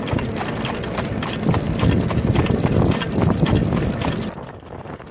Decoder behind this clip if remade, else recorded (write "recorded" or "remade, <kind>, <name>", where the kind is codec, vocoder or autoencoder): recorded